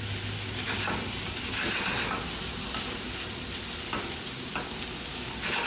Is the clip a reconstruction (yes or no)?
no